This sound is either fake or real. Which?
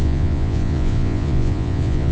fake